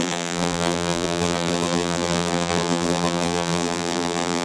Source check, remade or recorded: remade